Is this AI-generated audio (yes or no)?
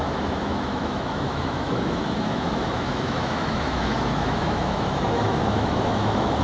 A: yes